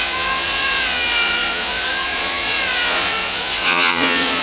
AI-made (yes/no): yes